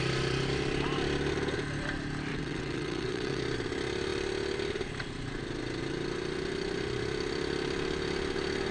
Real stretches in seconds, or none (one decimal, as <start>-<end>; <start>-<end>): 0.0-2.3; 3.4-8.7